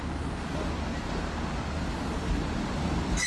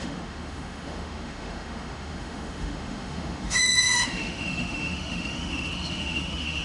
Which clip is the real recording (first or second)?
first